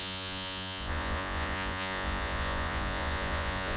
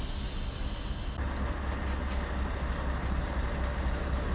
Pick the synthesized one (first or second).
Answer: first